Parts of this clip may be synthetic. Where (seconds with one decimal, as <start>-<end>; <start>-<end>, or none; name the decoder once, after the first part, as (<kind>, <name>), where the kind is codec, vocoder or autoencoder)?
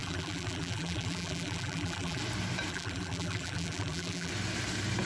0.0-2.2 (vocoder, BigVGAN v2); 2.7-4.3